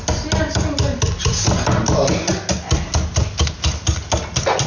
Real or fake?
real